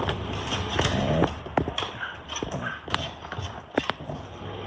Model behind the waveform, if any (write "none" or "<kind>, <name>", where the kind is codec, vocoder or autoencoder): none